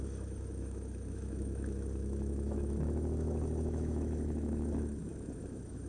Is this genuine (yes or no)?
no